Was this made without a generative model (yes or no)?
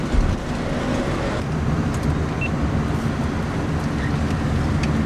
yes